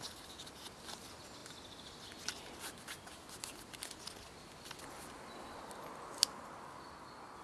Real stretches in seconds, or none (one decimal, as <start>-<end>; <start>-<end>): 0.0-7.4